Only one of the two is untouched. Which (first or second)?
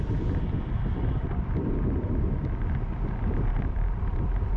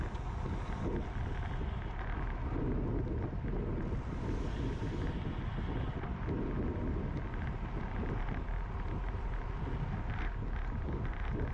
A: second